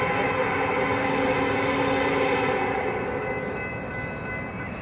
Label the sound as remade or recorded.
recorded